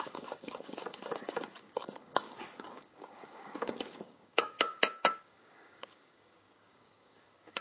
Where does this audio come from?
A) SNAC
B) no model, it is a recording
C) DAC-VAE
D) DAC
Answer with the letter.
D